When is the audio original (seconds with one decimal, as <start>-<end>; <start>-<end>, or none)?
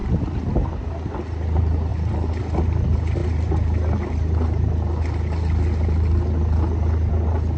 0.0-7.6